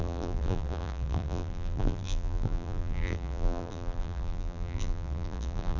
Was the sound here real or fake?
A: fake